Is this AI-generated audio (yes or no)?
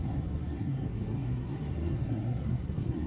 yes